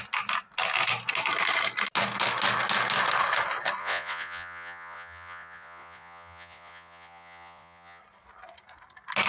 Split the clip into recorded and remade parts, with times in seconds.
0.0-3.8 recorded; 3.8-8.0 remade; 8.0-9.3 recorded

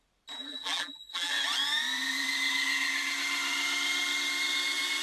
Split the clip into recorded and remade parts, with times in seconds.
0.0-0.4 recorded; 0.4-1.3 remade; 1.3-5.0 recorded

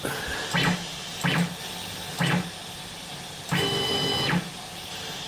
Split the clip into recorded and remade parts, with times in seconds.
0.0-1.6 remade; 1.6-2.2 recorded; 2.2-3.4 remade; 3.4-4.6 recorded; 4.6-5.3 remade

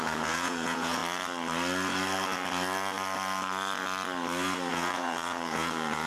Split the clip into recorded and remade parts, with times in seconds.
0.0-1.0 remade; 1.0-4.7 recorded; 4.7-6.1 remade